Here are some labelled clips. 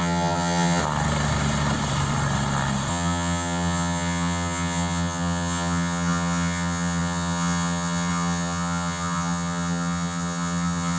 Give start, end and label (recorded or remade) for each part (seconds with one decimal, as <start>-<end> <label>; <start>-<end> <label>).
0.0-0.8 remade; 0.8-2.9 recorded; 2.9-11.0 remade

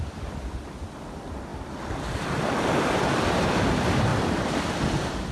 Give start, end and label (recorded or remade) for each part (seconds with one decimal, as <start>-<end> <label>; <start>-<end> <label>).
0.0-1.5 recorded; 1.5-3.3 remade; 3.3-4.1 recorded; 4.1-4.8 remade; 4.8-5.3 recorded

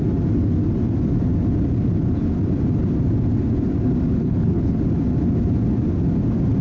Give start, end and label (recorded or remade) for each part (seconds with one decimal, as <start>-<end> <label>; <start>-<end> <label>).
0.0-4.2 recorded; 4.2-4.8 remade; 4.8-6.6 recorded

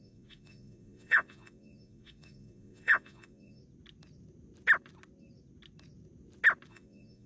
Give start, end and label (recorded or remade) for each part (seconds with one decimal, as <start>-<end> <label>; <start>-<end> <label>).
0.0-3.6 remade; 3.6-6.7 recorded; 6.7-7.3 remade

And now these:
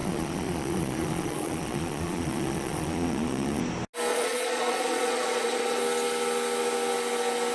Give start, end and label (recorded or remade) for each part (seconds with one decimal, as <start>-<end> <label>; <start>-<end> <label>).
0.0-3.6 remade; 3.6-4.1 recorded; 4.1-5.8 remade; 5.8-7.5 recorded

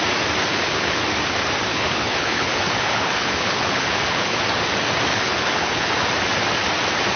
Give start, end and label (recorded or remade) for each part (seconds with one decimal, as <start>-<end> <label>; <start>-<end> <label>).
0.0-0.5 recorded; 0.5-1.0 remade; 1.0-1.7 recorded; 1.7-4.4 remade; 4.4-5.1 recorded; 5.1-5.9 remade; 5.9-7.2 recorded